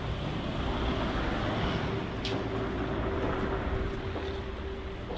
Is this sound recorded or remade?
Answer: recorded